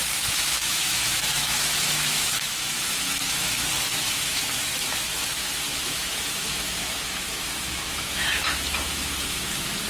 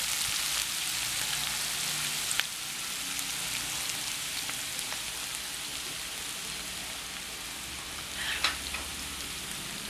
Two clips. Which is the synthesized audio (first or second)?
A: first